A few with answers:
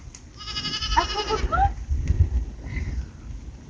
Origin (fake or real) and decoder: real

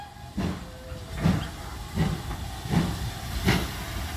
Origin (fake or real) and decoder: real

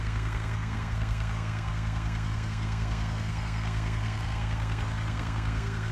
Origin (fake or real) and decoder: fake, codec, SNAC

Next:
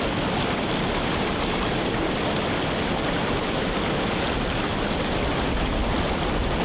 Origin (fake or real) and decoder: real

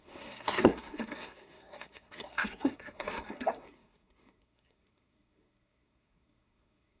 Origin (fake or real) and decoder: fake, codec, SNAC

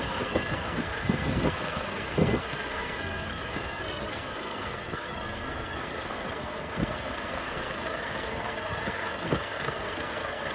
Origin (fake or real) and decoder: fake, codec, SNAC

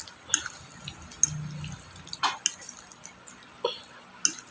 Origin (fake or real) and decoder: real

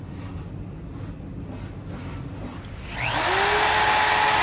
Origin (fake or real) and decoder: real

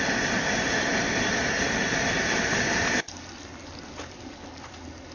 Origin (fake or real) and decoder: real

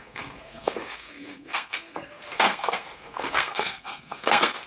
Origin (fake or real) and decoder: fake, codec, SNAC